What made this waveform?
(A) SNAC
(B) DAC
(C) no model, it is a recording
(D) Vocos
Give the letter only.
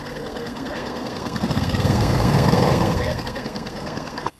A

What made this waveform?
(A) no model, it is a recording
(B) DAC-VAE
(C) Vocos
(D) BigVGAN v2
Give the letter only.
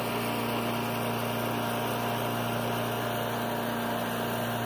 A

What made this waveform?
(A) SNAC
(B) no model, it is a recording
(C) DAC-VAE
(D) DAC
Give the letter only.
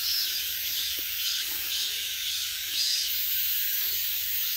D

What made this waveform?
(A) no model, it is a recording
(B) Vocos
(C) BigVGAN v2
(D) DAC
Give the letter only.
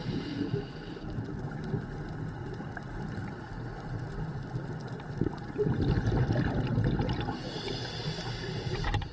A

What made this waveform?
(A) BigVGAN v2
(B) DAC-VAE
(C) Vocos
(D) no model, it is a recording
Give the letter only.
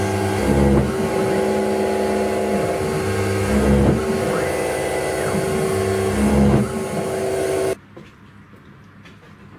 D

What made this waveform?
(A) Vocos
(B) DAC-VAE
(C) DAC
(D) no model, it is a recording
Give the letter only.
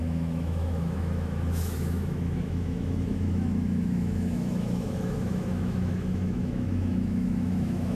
B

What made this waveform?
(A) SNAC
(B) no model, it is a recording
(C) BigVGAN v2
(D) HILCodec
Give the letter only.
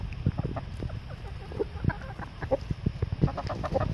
B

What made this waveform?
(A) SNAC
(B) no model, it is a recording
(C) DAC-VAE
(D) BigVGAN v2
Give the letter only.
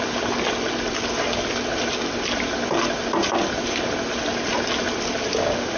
B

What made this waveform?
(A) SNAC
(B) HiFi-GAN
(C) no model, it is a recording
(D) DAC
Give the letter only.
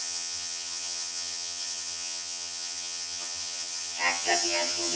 B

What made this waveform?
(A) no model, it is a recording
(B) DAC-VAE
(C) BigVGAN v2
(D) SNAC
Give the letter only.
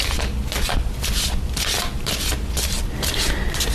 A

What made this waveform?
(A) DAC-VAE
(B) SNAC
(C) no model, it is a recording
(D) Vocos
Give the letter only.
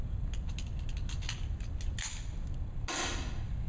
C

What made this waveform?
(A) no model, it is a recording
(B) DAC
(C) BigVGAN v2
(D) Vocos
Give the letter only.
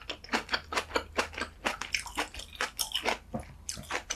A